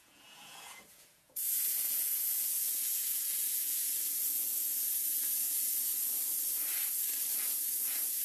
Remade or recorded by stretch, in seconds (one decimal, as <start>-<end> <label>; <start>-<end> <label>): 0.0-5.9 remade; 5.9-7.4 recorded; 7.4-8.2 remade